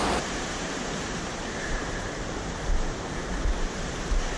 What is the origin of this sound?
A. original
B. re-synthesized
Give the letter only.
B